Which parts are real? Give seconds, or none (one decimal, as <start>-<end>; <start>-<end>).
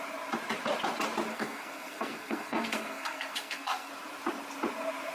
0.0-1.3; 3.9-5.1